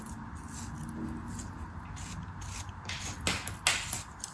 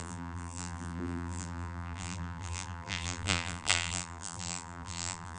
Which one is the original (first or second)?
first